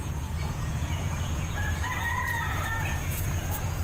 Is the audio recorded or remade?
remade